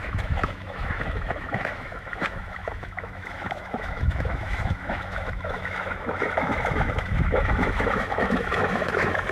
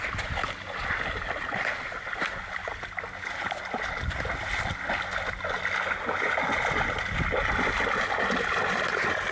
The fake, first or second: first